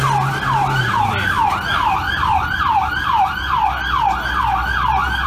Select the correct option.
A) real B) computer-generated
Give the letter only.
A